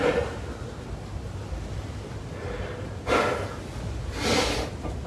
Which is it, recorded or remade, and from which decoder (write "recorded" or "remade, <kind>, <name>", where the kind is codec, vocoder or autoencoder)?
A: recorded